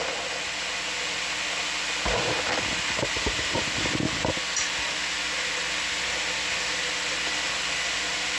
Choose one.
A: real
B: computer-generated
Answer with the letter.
A